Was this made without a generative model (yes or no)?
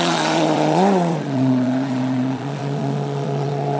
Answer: no